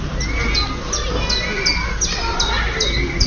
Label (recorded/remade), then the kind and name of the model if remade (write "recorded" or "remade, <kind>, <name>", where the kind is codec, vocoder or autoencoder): recorded